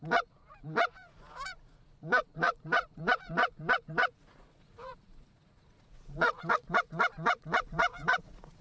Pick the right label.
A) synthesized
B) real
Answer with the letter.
A